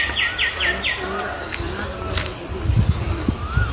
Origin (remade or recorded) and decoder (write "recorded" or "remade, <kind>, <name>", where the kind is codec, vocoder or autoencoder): recorded